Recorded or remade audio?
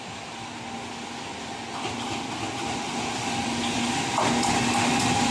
recorded